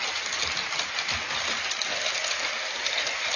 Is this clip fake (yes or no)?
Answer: no